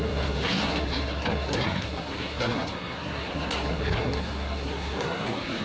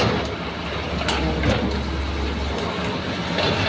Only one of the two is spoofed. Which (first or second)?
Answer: first